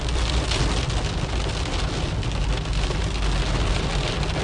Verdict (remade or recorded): recorded